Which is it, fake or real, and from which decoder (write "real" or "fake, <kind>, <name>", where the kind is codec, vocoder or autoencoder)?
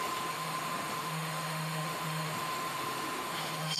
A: fake, autoencoder, DAC-VAE